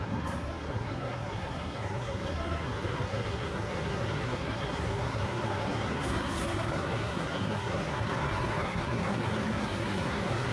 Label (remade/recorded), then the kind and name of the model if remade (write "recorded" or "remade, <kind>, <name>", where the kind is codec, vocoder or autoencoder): remade, codec, SNAC